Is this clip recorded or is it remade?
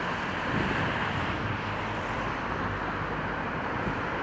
remade